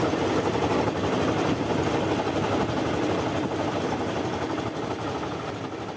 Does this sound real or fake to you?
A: real